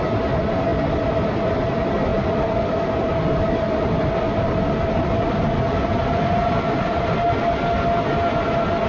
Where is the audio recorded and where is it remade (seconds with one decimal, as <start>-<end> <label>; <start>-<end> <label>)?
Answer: 0.0-8.9 recorded

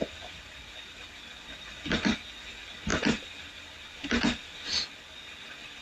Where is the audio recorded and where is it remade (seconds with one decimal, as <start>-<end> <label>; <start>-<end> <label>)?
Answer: 0.0-5.8 recorded

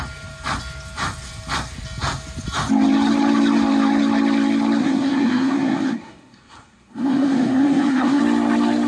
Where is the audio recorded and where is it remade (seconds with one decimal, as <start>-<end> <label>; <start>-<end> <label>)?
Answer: 0.0-4.8 recorded; 4.8-8.2 remade; 8.2-8.9 recorded

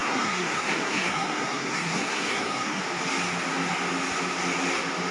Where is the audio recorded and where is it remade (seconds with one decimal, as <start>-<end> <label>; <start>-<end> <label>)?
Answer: 0.0-2.8 remade; 2.8-5.1 recorded

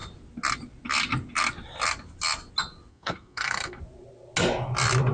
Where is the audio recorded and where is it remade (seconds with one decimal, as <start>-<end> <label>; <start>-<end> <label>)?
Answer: 0.0-2.9 recorded; 2.9-3.8 remade; 3.8-5.1 recorded

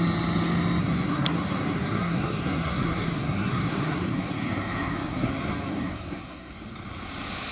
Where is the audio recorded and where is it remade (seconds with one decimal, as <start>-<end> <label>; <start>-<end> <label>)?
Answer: 0.0-0.8 recorded; 0.8-5.3 remade; 5.3-5.7 recorded; 5.7-6.5 remade; 6.5-7.5 recorded

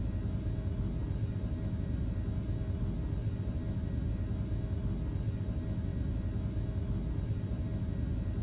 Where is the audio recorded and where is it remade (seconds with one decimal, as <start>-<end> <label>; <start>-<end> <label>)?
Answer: 0.0-8.4 recorded